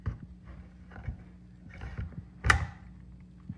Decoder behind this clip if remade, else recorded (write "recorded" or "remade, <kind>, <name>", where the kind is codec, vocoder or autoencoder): recorded